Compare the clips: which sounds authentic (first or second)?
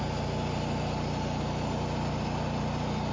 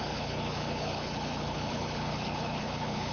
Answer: first